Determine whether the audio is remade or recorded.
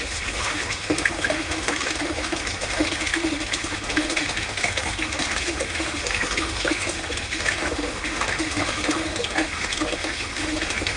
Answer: remade